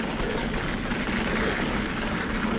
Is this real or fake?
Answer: real